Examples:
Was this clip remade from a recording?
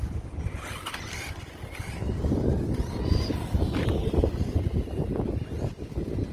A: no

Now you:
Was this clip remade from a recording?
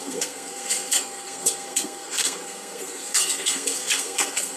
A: yes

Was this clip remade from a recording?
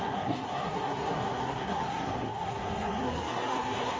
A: yes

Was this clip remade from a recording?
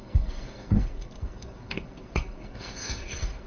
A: yes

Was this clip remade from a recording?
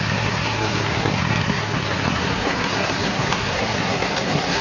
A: yes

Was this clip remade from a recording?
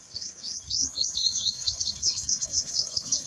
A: yes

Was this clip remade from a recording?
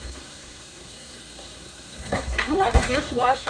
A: yes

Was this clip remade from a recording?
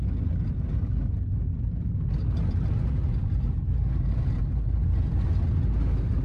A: no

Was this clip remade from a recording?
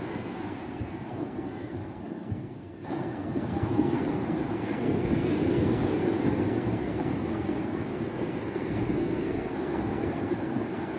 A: yes